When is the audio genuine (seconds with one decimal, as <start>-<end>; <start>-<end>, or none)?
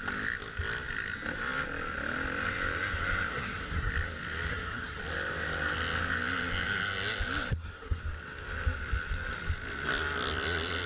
0.0-3.3; 3.9-4.5; 5.0-7.5; 8.0-10.9